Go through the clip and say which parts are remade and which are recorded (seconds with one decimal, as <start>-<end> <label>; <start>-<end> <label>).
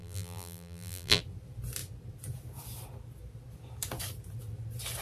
0.0-1.2 remade; 1.2-5.0 recorded